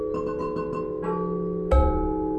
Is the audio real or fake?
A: real